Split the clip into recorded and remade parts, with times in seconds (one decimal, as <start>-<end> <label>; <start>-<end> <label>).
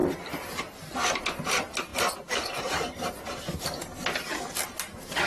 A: 0.0-5.3 recorded